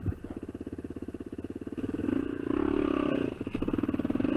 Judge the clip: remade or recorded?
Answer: recorded